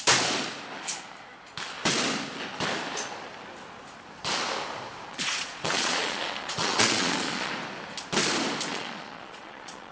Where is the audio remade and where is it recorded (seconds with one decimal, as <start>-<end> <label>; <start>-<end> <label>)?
0.0-5.1 recorded; 5.1-7.5 remade; 7.5-8.7 recorded; 8.7-9.9 remade